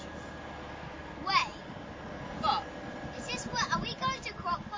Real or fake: real